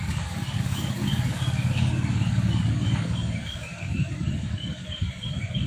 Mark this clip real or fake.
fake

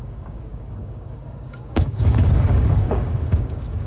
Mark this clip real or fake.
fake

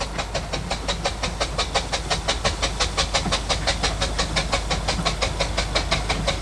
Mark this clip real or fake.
real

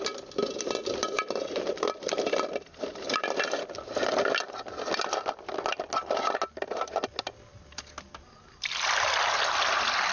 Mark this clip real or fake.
real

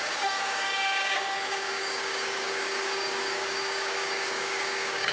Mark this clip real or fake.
fake